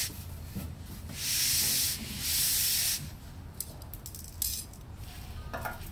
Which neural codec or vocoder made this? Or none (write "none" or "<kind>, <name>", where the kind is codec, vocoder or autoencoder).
none